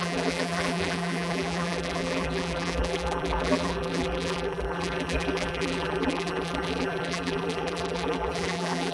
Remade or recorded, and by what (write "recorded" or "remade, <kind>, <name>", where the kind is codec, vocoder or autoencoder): remade, vocoder, BigVGAN v2